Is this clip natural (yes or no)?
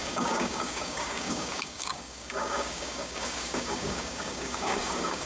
no